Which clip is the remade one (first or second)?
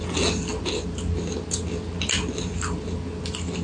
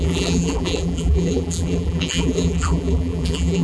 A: second